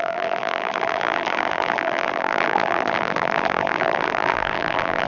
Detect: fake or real fake